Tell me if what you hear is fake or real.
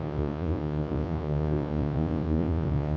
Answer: fake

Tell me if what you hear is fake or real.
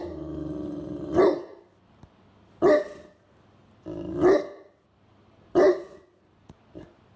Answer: real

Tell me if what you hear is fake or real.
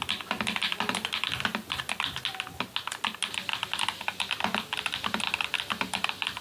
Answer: real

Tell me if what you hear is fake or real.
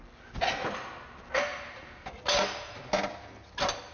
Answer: real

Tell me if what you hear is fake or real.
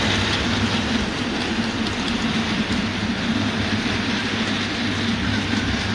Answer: real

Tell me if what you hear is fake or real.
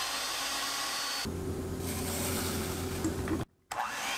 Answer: real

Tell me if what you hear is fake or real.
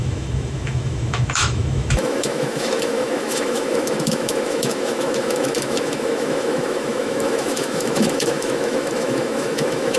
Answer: fake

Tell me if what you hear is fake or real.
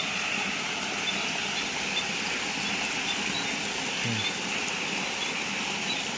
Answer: real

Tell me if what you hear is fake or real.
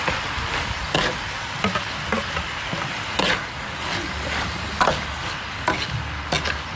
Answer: real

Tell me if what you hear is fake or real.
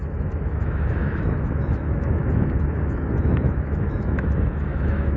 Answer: fake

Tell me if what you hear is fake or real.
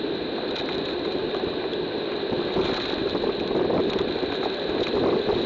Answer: real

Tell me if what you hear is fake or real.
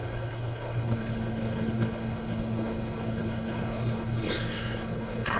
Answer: fake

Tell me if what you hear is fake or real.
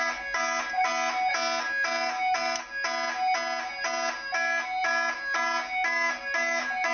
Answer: real